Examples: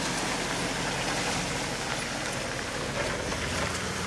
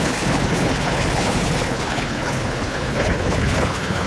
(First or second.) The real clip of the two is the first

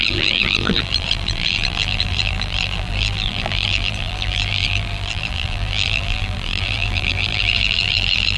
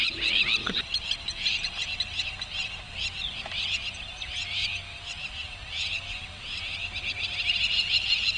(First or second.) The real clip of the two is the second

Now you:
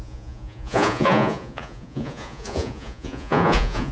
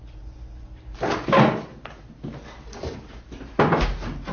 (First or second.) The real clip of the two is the second